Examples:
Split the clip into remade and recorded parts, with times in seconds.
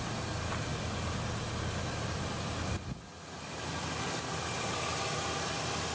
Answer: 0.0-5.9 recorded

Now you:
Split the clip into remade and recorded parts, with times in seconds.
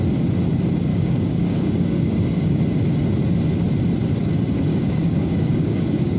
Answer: 0.0-0.9 recorded; 0.9-2.6 remade; 2.6-4.7 recorded; 4.7-6.2 remade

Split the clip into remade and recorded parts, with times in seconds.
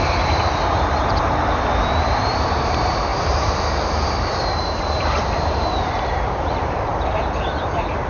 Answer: 0.0-8.1 remade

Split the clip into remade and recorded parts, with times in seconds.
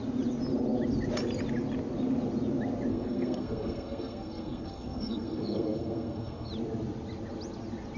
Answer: 0.0-2.9 recorded; 2.9-6.5 remade; 6.5-8.0 recorded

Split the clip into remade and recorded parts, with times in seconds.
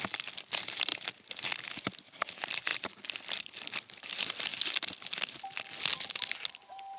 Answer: 0.0-0.9 remade; 0.9-1.7 recorded; 1.7-4.5 remade; 4.5-5.4 recorded; 5.4-5.9 remade; 5.9-7.0 recorded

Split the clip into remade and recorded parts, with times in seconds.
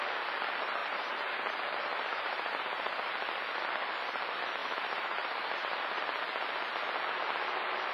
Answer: 0.0-0.8 recorded; 0.8-3.1 remade; 3.1-4.6 recorded; 4.6-6.0 remade; 6.0-7.9 recorded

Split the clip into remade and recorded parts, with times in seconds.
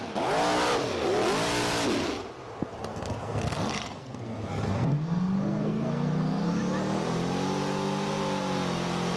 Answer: 0.0-2.9 recorded; 2.9-6.6 remade; 6.6-9.2 recorded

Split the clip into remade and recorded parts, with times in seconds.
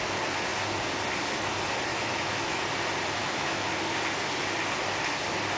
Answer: 0.0-1.9 recorded; 1.9-2.6 remade; 2.6-3.2 recorded; 3.2-3.7 remade; 3.7-5.6 recorded